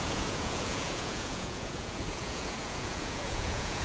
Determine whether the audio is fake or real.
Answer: fake